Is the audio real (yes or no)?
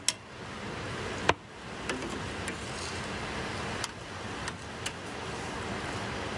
yes